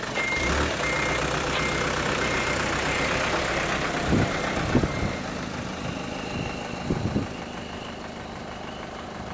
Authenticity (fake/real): fake